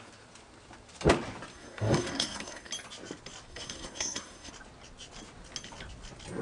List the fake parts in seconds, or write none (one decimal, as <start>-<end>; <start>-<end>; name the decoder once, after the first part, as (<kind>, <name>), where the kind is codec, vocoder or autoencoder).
1.5-2.7 (codec, SNAC); 3.5-4.5